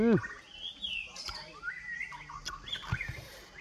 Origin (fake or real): real